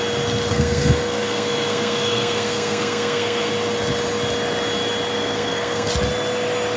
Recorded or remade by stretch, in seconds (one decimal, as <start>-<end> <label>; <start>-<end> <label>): 0.0-0.5 recorded; 0.5-3.5 remade; 3.5-5.1 recorded; 5.1-5.9 remade; 5.9-6.8 recorded